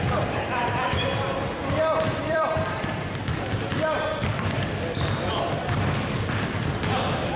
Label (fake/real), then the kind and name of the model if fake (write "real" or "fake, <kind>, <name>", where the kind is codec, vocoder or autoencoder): real